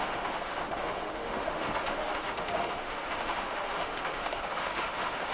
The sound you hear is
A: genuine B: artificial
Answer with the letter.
B